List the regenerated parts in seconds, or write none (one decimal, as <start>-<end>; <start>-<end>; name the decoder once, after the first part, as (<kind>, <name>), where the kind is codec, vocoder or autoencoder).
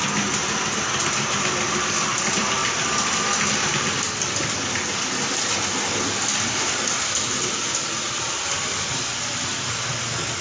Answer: none